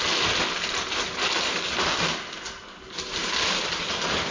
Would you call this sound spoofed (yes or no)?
no